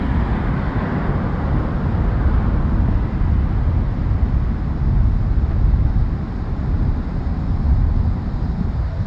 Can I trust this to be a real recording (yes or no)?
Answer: yes